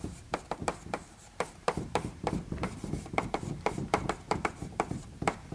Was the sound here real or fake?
fake